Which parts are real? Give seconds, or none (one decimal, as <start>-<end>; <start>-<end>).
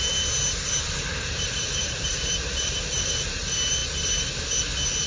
0.0-1.1; 3.4-5.1